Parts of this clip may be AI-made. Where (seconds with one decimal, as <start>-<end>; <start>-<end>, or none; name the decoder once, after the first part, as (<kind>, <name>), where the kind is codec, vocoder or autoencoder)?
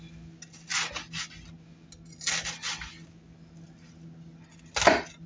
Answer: none